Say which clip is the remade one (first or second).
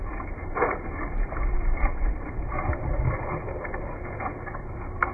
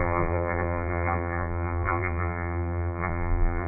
second